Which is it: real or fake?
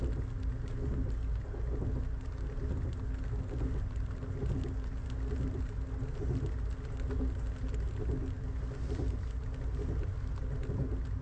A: real